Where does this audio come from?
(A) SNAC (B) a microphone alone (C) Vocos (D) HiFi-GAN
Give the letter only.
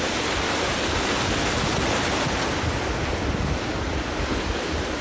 B